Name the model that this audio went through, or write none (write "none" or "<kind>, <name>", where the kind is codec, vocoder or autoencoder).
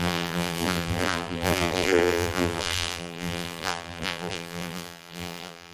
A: vocoder, BigVGAN v2